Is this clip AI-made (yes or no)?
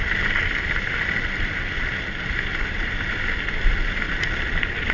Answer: no